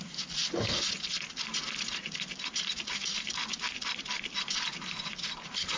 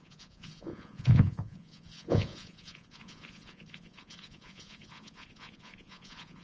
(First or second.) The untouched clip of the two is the first